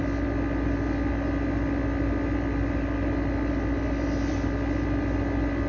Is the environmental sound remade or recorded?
recorded